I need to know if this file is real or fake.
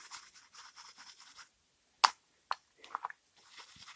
real